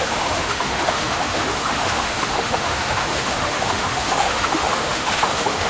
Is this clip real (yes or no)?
no